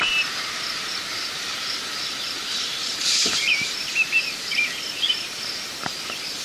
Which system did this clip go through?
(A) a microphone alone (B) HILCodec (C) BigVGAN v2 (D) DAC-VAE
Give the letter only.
C